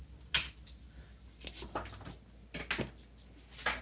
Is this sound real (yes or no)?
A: yes